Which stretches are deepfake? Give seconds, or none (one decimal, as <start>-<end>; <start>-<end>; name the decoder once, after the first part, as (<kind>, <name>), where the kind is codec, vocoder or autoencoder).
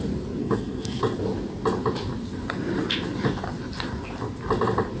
0.4-1.0 (codec, SNAC)